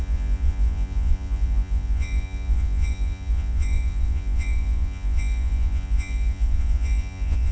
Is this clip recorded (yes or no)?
no